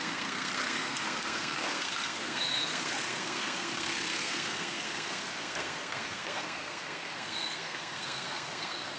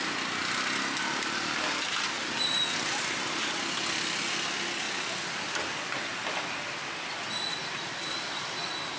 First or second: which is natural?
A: second